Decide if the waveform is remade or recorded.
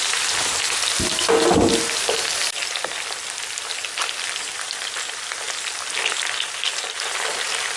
recorded